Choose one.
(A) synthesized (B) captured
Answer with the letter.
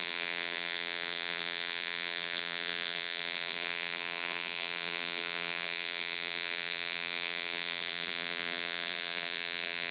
A